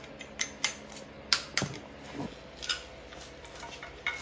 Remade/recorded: recorded